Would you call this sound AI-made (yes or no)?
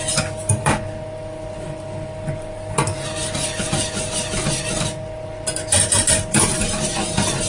no